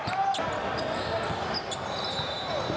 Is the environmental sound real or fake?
real